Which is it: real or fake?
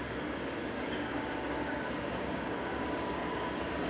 fake